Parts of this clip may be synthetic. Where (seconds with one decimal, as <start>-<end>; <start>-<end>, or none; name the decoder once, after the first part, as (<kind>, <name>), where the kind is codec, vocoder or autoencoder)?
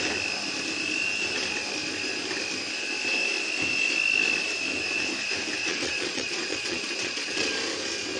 5.6-7.5 (vocoder, Vocos)